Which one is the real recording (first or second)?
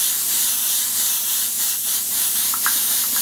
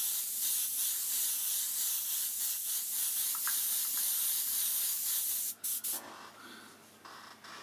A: second